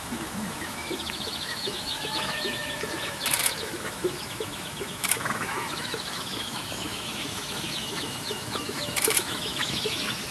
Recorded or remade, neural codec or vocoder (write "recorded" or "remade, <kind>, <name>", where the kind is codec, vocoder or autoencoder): remade, autoencoder, DAC-VAE